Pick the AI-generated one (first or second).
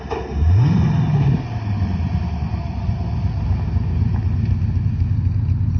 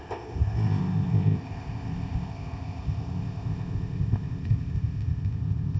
second